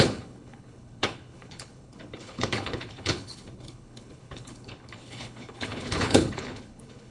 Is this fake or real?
fake